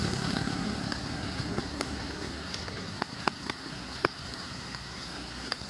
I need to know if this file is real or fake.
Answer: fake